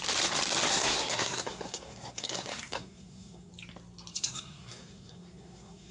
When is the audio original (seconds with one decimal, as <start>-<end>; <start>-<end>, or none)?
0.0-0.7; 3.5-4.1